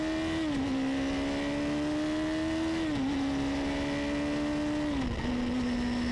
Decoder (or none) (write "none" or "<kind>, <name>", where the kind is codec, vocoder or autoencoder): none